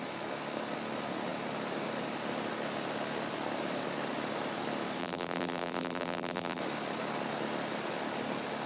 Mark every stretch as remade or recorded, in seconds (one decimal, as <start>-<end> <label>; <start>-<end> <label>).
0.0-5.0 recorded; 5.0-6.6 remade; 6.6-8.7 recorded